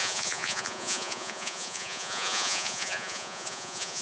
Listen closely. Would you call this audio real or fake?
fake